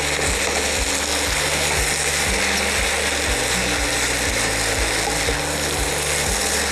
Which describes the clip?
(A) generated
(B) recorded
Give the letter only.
B